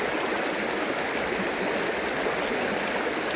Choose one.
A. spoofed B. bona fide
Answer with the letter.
B